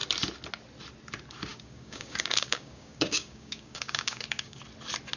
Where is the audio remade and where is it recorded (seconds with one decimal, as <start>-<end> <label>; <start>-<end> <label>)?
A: 0.0-1.5 recorded; 1.5-4.6 remade; 4.6-5.2 recorded